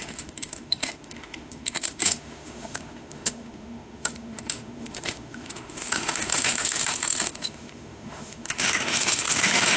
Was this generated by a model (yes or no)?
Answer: yes